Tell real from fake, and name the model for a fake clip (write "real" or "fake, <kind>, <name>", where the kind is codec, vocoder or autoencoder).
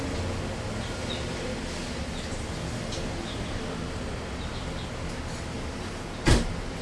real